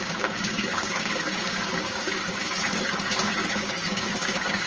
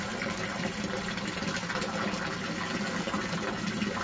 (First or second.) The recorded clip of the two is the second